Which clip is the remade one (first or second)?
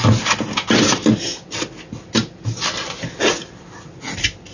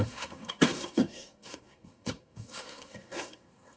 second